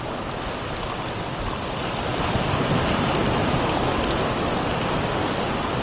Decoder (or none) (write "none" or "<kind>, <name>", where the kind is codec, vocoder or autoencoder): vocoder, BigVGAN v2